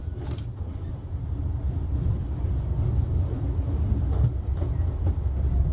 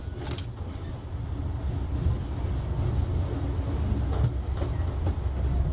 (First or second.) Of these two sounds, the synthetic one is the first